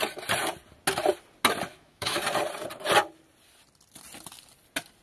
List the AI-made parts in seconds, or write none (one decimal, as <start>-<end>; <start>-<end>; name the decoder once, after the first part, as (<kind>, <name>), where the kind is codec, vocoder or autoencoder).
1.7-2.2 (autoencoder, DAC-VAE)